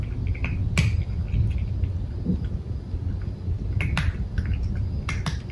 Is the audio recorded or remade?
recorded